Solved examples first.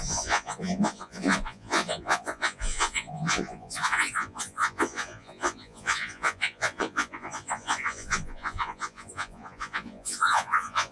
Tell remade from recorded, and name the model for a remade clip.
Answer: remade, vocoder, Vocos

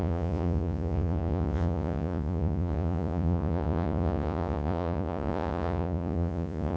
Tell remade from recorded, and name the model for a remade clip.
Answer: remade, vocoder, Vocos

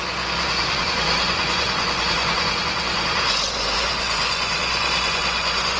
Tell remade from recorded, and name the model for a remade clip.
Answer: remade, vocoder, Vocos